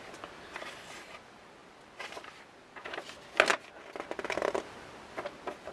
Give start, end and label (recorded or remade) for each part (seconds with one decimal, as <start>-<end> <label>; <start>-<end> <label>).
0.0-5.7 recorded